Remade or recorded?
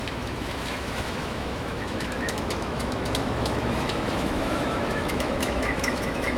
remade